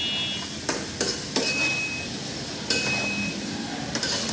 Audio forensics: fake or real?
real